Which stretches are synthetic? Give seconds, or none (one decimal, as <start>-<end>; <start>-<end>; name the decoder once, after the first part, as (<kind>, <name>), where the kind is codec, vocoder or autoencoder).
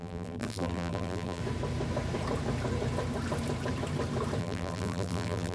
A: 0.0-1.4 (vocoder, BigVGAN v2); 4.4-5.5